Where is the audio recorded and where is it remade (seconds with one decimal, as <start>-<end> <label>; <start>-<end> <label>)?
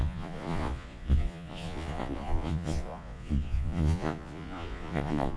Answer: 0.0-5.4 remade